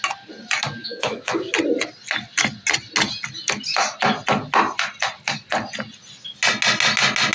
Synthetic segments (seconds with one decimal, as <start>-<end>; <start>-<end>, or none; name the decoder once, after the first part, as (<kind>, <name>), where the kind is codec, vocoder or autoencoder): 0.8-1.5 (autoencoder, DAC-VAE)

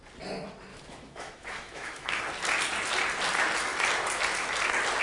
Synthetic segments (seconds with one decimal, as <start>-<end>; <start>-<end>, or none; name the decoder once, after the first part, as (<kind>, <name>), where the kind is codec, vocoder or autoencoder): 0.7-2.2 (autoencoder, DAC-VAE)

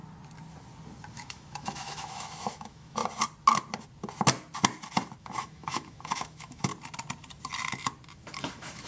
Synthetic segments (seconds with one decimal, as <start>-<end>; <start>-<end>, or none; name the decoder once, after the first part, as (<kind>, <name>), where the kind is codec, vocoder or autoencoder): 1.1-3.0 (autoencoder, DAC-VAE); 5.2-6.7; 8.5-8.9

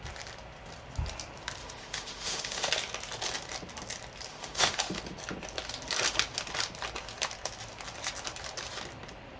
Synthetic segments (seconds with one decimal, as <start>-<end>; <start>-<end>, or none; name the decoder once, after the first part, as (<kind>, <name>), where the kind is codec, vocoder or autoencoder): 1.6-2.7 (autoencoder, DAC-VAE); 4.3-5.0